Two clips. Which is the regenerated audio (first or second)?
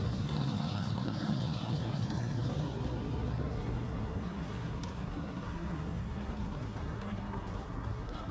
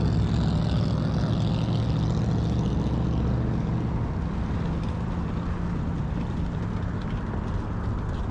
first